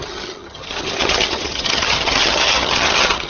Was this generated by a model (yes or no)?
yes